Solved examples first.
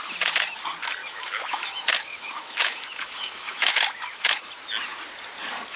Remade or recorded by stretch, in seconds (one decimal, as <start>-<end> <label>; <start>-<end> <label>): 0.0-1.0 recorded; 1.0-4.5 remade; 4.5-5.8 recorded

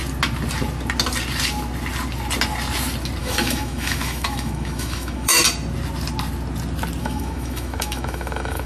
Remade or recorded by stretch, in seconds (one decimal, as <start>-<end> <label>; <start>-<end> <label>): 0.0-3.2 recorded; 3.2-5.4 remade; 5.4-7.0 recorded; 7.0-8.7 remade

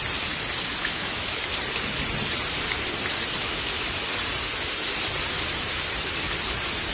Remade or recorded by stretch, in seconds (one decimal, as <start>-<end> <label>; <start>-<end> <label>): 0.0-0.8 recorded; 0.8-1.4 remade; 1.4-3.4 recorded; 3.4-4.1 remade; 4.1-6.9 recorded

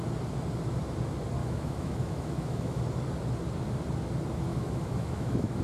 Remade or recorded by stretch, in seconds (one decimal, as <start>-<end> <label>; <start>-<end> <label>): 0.0-1.4 recorded; 1.4-2.8 remade; 2.8-4.5 recorded; 4.5-5.6 remade

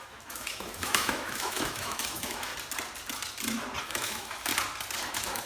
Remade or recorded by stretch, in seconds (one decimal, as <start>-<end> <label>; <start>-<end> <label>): 0.0-2.5 remade; 2.5-3.8 recorded; 3.8-4.5 remade; 4.5-5.1 recorded; 5.1-5.5 remade

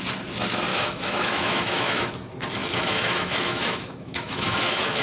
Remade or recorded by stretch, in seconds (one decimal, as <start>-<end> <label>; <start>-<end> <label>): 0.0-0.7 recorded; 0.7-2.1 remade; 2.1-2.6 recorded; 2.6-5.0 remade